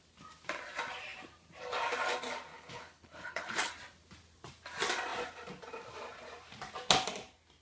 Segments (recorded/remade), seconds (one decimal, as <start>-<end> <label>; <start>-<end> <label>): 0.0-2.5 recorded; 2.5-3.7 remade; 3.7-7.6 recorded